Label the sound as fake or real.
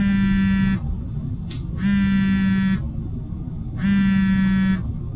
real